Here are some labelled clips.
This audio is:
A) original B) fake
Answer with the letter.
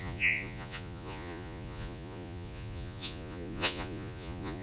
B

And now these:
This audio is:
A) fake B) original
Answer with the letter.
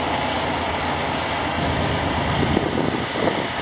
B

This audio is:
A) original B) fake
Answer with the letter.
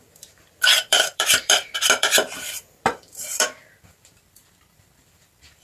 B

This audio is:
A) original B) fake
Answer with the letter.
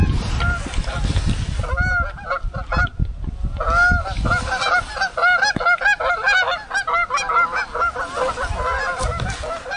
A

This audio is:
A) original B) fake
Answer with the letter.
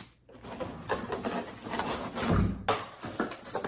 A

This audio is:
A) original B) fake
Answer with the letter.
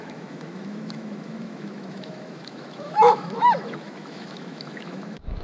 B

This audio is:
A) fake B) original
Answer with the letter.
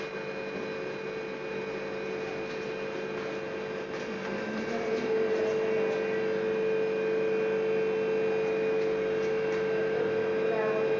B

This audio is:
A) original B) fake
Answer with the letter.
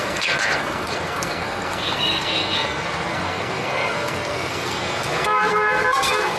B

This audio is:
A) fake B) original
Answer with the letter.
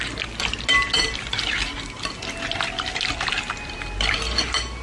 B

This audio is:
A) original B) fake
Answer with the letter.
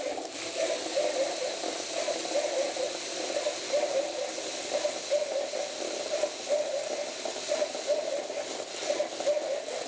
A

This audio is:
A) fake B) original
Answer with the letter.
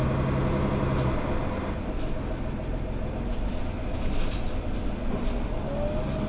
B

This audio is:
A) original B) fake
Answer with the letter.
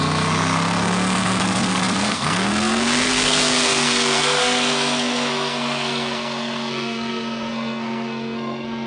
B